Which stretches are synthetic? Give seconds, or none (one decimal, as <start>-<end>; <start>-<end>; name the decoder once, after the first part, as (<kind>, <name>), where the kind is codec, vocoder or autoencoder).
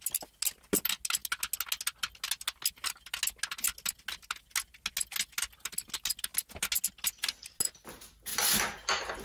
none